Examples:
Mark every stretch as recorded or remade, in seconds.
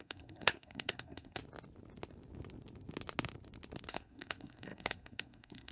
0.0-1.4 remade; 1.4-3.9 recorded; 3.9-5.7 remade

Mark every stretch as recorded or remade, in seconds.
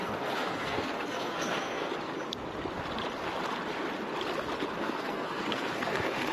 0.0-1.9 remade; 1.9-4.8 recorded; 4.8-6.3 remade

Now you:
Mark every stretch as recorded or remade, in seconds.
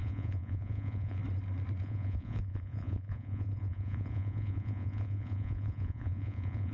0.0-1.2 remade; 1.2-1.8 recorded; 1.8-6.7 remade